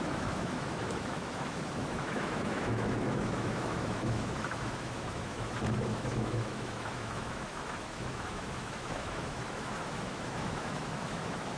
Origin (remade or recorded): remade